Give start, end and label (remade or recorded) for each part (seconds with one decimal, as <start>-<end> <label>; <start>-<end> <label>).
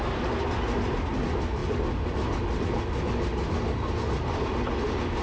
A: 0.0-5.2 recorded